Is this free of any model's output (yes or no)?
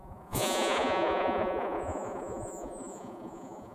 no